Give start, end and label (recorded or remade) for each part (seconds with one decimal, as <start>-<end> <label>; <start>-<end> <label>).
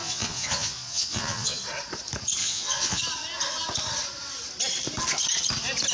0.0-1.6 remade; 1.6-2.4 recorded; 2.4-3.0 remade; 3.0-5.9 recorded